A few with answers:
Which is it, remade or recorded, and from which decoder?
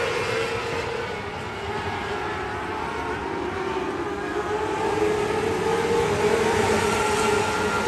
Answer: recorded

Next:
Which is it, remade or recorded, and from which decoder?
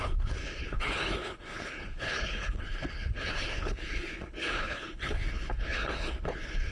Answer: remade, codec, HILCodec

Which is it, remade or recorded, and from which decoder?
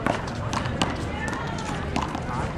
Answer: recorded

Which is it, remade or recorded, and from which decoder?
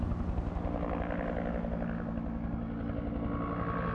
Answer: recorded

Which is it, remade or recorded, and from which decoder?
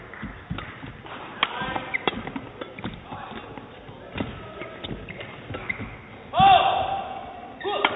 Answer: recorded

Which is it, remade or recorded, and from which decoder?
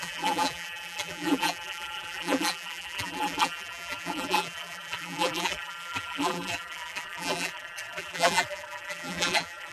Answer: remade, vocoder, BigVGAN v2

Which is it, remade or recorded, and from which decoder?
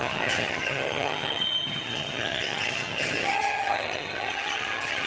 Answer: remade, vocoder, HiFi-GAN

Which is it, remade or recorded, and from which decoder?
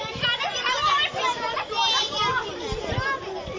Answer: recorded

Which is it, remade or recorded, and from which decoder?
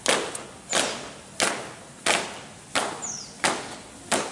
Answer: recorded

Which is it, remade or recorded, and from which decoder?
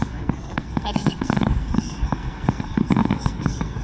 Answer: remade, codec, SNAC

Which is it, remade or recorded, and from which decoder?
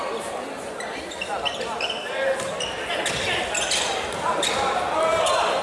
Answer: recorded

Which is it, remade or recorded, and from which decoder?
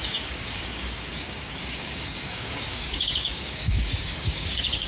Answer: remade, codec, DAC